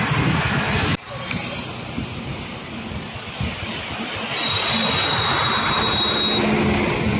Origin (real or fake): real